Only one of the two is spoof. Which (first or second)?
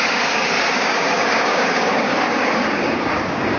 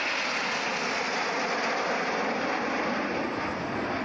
first